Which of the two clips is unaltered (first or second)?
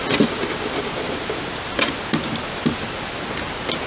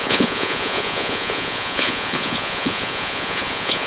first